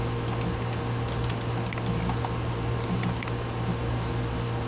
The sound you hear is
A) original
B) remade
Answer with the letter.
A